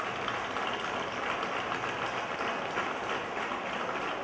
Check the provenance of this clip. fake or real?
real